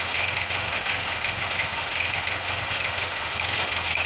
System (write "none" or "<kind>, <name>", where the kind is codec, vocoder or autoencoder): autoencoder, DAC-VAE